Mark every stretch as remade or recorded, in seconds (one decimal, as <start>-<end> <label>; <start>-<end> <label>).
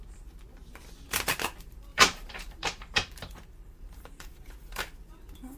0.0-1.9 recorded; 1.9-5.6 remade